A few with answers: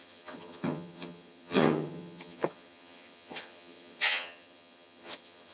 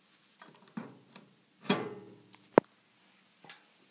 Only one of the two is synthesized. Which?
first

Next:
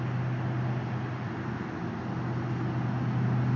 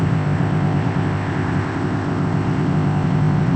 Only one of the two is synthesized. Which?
second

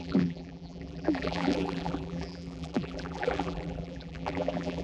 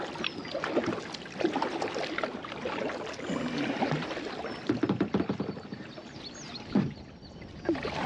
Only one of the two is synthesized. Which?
first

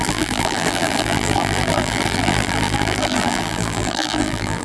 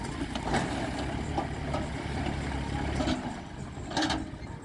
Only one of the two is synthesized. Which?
first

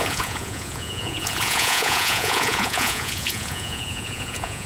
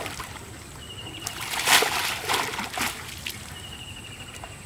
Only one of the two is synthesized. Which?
first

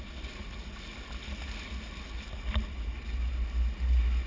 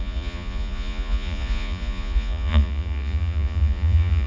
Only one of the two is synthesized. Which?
second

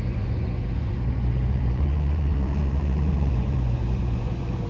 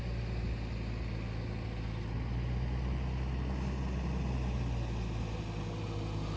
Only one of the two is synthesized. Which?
first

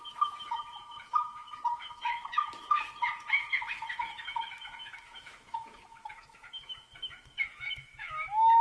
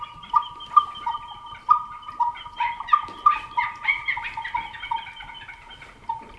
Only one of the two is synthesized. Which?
first